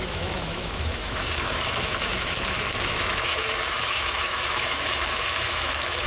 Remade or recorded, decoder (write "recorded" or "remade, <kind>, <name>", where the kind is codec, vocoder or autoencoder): remade, autoencoder, DAC-VAE